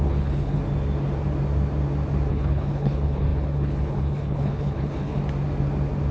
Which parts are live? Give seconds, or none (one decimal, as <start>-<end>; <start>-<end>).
0.6-2.3; 5.2-6.1